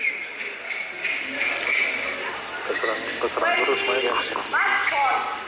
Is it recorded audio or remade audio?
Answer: recorded